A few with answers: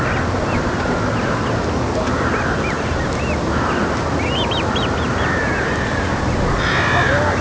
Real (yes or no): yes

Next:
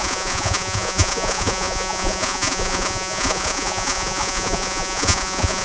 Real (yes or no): no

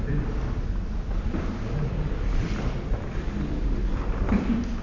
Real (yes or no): yes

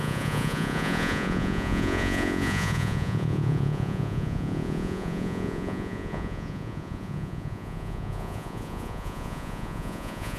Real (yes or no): no